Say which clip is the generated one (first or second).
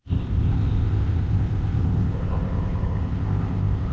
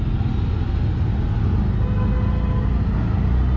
first